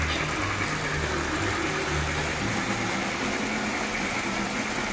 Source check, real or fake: real